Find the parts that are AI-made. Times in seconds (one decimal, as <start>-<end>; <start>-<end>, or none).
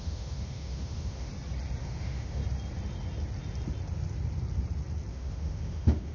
0.0-1.3; 1.8-2.4; 5.1-6.1